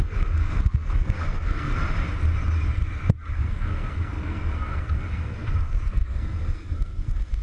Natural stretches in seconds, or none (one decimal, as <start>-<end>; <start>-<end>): 1.8-3.3